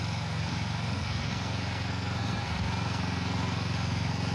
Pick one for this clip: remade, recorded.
remade